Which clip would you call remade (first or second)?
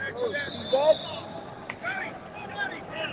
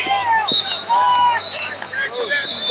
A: second